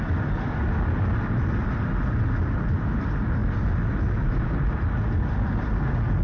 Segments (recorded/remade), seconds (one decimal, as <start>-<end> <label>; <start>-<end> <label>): 0.0-6.2 recorded